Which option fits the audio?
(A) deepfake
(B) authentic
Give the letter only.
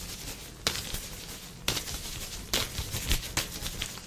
B